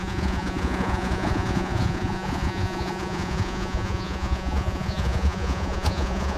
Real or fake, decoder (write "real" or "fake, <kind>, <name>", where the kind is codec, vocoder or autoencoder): fake, vocoder, Vocos